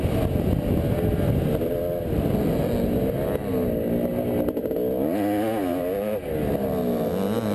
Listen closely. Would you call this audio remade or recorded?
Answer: recorded